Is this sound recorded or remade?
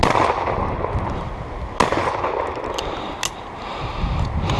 recorded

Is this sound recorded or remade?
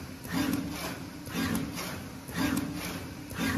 recorded